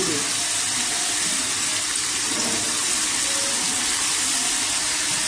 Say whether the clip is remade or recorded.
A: recorded